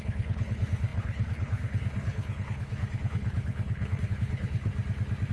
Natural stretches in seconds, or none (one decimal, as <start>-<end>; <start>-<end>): 4.7-5.3